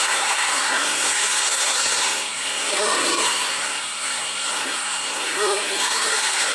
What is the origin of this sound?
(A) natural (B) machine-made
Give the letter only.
B